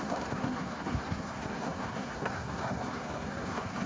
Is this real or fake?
fake